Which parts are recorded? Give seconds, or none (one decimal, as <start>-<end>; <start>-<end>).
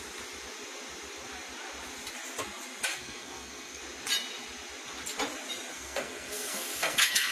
0.0-2.9; 3.8-5.7